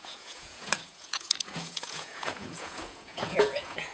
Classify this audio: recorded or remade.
remade